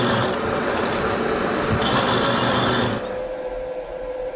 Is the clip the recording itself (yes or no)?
yes